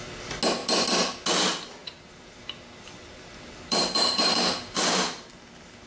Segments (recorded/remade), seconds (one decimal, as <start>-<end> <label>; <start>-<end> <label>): 0.0-1.8 recorded; 1.8-5.3 remade; 5.3-5.9 recorded